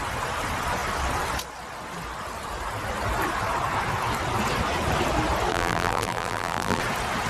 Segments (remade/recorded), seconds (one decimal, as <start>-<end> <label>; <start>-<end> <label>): 0.0-5.5 recorded; 5.5-6.8 remade; 6.8-7.3 recorded